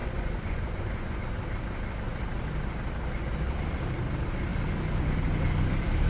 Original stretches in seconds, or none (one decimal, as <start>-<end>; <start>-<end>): 1.2-6.1